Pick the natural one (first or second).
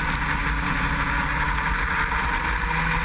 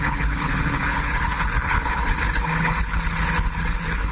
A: first